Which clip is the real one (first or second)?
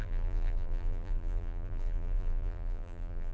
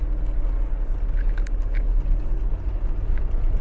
second